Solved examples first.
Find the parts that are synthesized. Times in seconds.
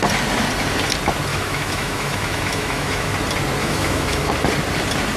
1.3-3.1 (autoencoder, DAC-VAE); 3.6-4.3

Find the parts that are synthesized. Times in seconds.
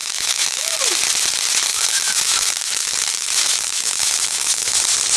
0.0-0.8 (autoencoder, DAC-VAE); 1.7-4.8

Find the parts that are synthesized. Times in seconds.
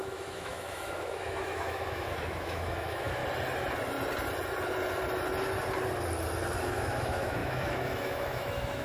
0.0-3.2 (autoencoder, DAC-VAE); 6.6-8.8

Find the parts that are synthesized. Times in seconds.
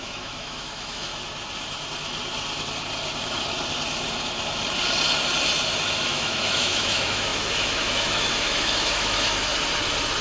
0.0-1.1 (autoencoder, DAC-VAE); 6.0-9.5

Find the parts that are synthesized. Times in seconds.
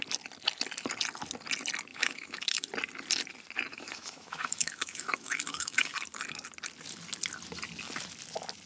1.9-2.7 (autoencoder, DAC-VAE); 3.7-5.9